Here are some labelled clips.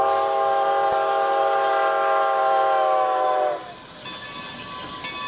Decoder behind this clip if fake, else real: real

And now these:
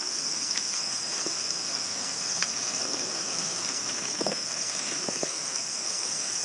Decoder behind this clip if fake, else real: fake, codec, SNAC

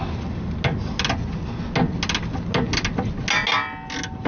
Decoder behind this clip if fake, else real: real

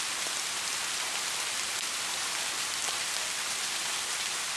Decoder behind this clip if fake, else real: real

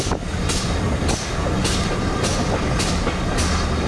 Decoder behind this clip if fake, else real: real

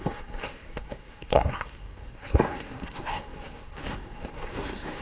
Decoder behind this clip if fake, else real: fake, codec, SNAC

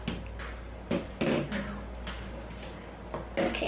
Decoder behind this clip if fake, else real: real